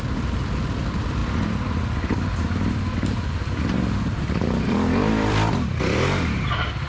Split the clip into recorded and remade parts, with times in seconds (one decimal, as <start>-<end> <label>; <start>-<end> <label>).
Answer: 0.0-6.9 remade